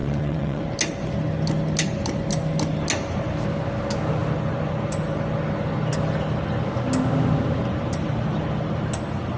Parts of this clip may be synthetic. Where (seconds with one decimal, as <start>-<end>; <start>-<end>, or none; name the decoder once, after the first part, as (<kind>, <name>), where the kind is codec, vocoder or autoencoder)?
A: 0.0-0.6 (vocoder, WaveNeXt)